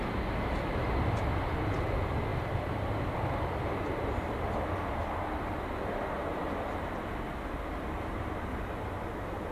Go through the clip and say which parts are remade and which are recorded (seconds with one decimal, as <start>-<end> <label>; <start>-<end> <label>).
0.0-9.5 recorded